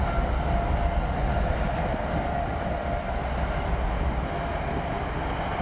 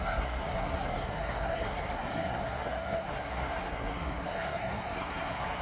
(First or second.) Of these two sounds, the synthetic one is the second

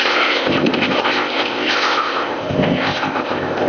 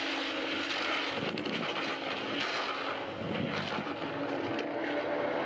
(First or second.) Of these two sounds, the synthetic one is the first